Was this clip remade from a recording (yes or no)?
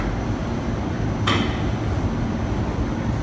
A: no